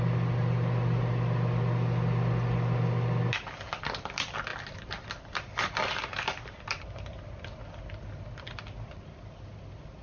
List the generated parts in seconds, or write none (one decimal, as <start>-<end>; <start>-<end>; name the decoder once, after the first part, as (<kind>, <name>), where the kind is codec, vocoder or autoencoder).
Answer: 4.5-7.8 (vocoder, BigVGAN v2)